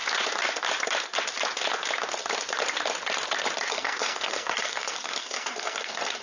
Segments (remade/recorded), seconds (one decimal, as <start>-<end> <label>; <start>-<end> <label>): 0.0-3.7 recorded; 3.7-6.2 remade